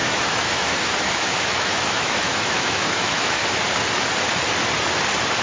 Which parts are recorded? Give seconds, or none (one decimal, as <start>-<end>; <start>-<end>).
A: 3.4-5.4